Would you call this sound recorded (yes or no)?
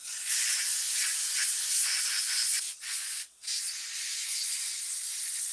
no